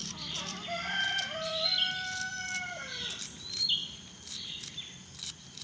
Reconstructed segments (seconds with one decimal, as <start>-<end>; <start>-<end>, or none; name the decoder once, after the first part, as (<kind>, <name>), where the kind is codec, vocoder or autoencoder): 0.0-3.1 (vocoder, BigVGAN v2)